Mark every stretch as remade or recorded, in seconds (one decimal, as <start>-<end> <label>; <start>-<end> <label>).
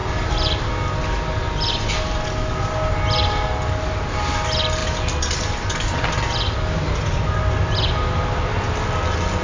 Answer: 0.0-9.4 recorded